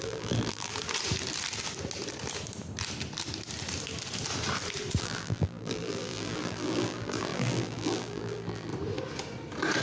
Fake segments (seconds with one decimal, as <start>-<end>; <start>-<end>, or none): 0.0-0.7; 5.0-8.7